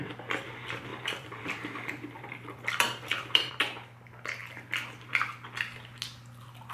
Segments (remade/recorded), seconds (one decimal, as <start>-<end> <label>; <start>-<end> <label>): 0.0-0.9 recorded; 0.9-3.5 remade; 3.5-6.7 recorded